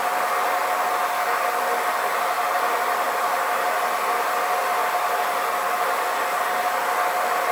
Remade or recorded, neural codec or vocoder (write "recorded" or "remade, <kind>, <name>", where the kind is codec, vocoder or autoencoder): recorded